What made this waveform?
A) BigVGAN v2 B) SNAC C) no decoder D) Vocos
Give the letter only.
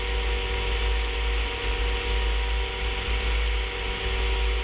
C